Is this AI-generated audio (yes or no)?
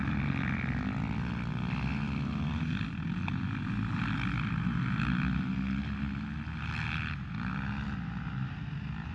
no